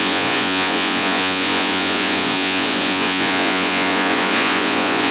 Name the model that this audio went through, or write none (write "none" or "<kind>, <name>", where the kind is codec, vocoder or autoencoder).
vocoder, Vocos